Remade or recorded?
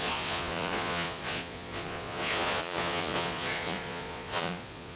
remade